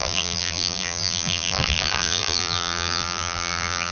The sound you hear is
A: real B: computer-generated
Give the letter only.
B